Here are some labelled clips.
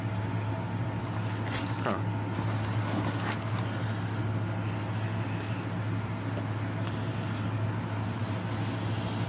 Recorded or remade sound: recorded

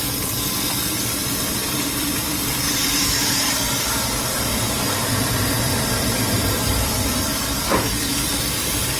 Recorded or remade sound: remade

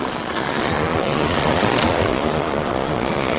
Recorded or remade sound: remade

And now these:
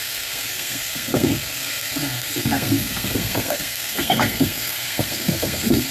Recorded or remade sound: remade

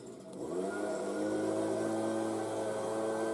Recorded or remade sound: recorded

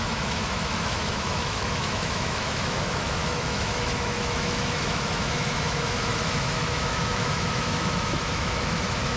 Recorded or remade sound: remade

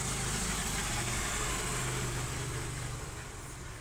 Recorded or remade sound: recorded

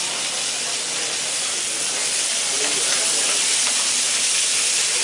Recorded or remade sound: recorded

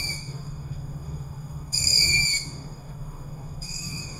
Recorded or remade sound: remade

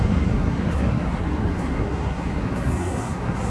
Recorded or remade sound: remade